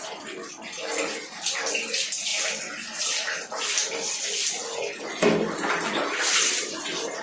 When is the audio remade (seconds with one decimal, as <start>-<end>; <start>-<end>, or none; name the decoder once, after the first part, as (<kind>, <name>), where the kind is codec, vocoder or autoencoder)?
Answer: none